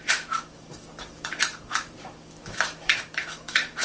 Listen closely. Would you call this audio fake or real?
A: fake